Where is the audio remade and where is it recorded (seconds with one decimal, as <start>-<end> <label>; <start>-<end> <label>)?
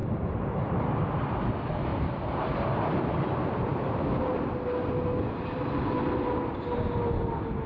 0.0-1.5 remade; 1.5-1.9 recorded; 1.9-3.2 remade; 3.2-7.7 recorded